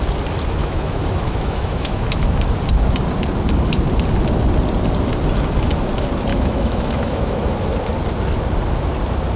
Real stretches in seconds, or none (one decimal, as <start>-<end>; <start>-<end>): 0.0-0.6; 2.5-6.3; 7.5-9.4